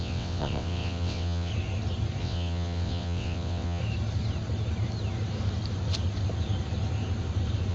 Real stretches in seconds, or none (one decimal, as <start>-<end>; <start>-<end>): 1.5-2.2; 3.8-7.7